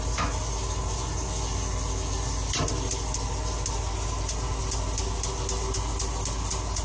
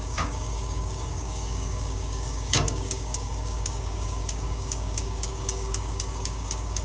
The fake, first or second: second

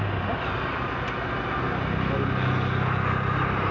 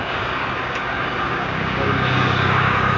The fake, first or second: second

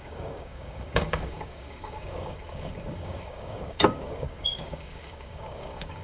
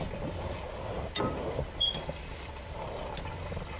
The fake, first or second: first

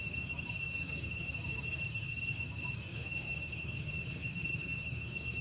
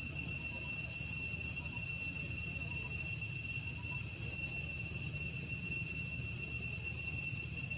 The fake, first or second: first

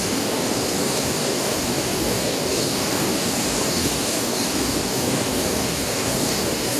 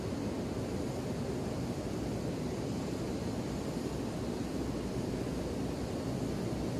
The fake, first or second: first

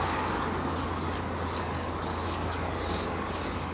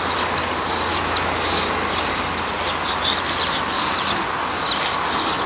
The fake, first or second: first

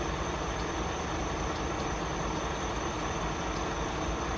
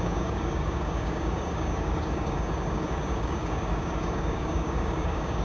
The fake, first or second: second